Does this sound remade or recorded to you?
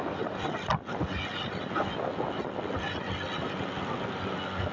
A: recorded